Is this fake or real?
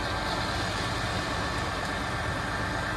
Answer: real